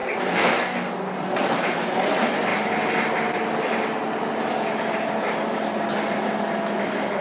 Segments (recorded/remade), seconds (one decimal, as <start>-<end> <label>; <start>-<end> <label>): 0.0-0.9 remade; 0.9-7.2 recorded